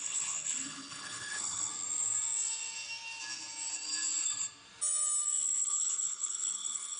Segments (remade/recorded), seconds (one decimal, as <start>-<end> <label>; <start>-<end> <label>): 0.0-1.7 remade; 1.7-5.4 recorded; 5.4-7.0 remade